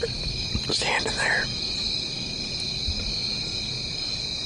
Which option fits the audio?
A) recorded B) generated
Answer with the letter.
A